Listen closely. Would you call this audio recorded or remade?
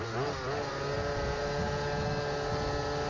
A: recorded